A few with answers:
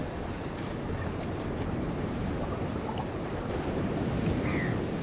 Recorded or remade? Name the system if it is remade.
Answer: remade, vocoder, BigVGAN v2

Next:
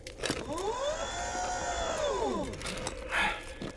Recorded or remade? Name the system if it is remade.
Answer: recorded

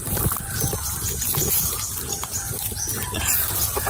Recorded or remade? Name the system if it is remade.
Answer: recorded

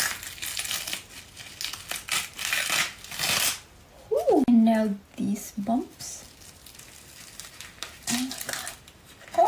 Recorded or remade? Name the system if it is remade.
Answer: recorded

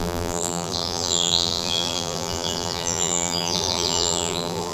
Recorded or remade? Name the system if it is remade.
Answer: remade, vocoder, BigVGAN v2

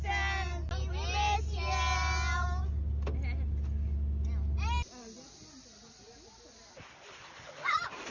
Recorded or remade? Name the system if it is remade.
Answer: recorded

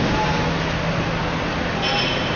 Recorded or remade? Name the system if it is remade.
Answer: recorded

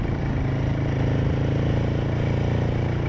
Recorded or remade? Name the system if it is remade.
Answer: recorded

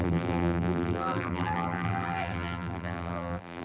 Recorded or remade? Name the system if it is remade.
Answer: remade, vocoder, BigVGAN v2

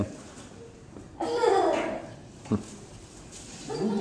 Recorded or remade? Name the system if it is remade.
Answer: recorded